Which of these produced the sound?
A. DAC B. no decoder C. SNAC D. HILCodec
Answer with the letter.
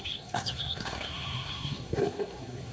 C